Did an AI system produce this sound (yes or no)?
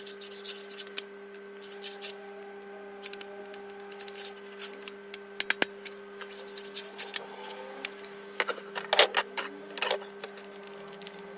no